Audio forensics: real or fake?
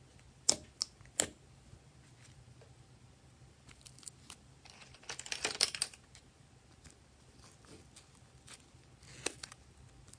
real